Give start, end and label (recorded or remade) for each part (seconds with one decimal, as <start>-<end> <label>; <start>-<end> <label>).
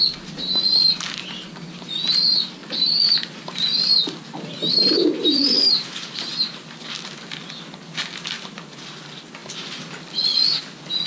0.0-2.6 recorded; 2.6-6.9 remade; 6.9-9.4 recorded; 9.4-10.6 remade; 10.6-11.1 recorded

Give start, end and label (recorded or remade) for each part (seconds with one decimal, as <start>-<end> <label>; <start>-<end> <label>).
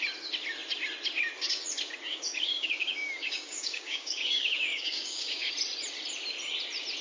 0.0-2.1 recorded; 2.1-5.5 remade; 5.5-7.0 recorded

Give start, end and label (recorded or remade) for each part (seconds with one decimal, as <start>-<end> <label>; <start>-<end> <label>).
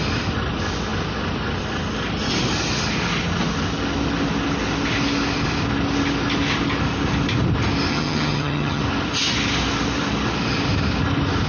0.0-7.9 recorded; 7.9-8.8 remade; 8.8-11.5 recorded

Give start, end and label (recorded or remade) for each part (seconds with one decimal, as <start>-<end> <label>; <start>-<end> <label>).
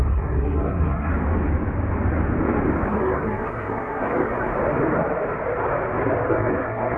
0.0-1.1 remade; 1.1-2.9 recorded; 2.9-4.5 remade; 4.5-6.3 recorded; 6.3-7.0 remade